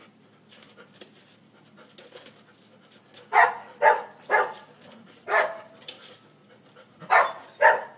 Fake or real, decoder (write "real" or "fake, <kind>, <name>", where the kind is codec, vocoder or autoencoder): real